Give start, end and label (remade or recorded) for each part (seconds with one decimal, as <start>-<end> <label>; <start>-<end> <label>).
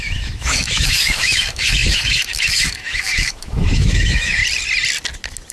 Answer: 0.0-4.4 remade; 4.4-5.5 recorded